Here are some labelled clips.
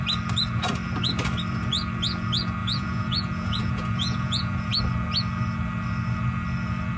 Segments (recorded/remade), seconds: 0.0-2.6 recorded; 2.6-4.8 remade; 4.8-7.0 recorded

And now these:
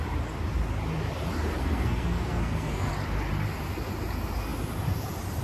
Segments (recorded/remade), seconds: 0.0-1.6 recorded; 1.6-2.9 remade; 2.9-5.4 recorded

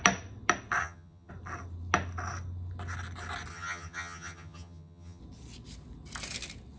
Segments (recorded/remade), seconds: 0.0-0.8 recorded; 0.8-1.3 remade; 1.3-3.5 recorded; 3.5-5.2 remade; 5.2-6.8 recorded

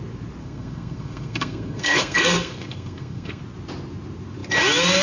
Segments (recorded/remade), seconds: 0.0-0.4 recorded; 0.4-3.4 remade; 3.4-5.0 recorded

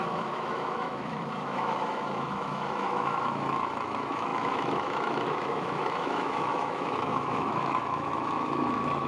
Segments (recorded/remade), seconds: 0.0-9.1 remade

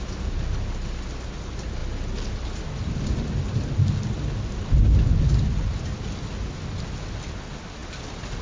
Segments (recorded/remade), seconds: 0.0-8.4 recorded

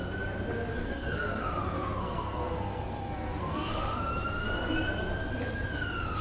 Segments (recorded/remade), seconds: 0.0-0.7 recorded; 0.7-1.6 remade; 1.6-2.0 recorded; 2.0-4.1 remade; 4.1-6.2 recorded